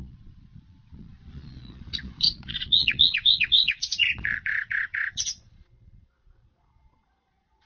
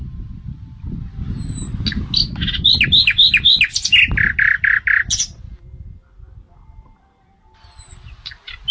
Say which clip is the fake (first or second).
first